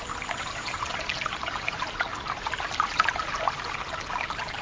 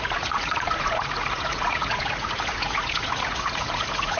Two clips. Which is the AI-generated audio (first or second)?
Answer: second